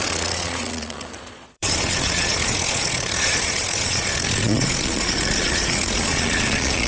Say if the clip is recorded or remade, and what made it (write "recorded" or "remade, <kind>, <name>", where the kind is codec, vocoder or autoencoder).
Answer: remade, vocoder, Vocos